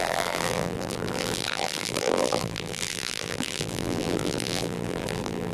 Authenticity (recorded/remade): remade